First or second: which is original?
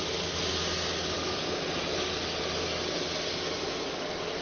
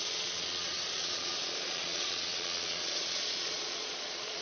first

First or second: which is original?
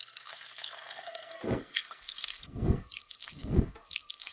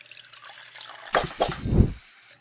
second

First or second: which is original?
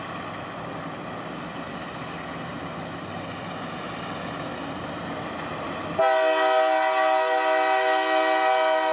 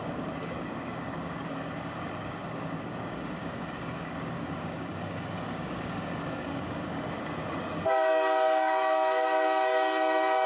first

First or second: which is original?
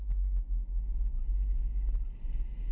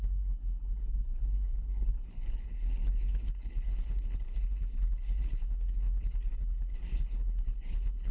first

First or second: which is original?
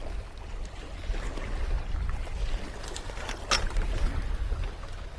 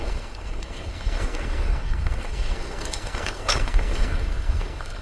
first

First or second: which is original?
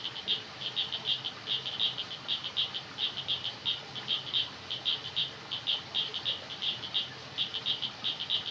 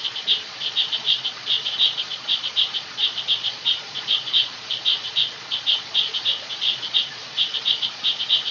first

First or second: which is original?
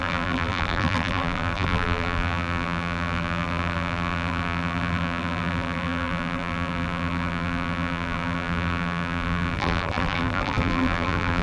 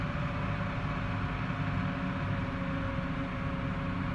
second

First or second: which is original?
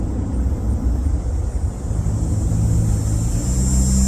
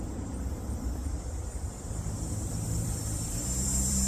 first